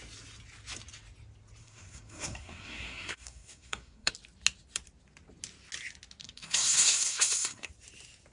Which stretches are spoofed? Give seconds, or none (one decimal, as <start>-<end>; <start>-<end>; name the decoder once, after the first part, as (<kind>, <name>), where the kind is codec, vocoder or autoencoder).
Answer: 1.6-4.1 (codec, SNAC); 6.2-7.7